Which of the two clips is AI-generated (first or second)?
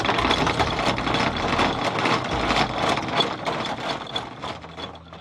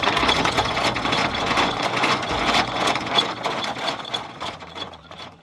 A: second